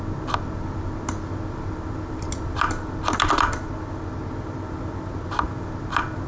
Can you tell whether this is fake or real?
real